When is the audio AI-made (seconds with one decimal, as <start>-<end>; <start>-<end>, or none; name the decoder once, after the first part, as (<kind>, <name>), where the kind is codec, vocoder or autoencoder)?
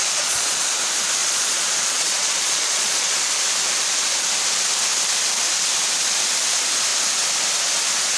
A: 0.0-0.7 (vocoder, Vocos); 1.2-3.3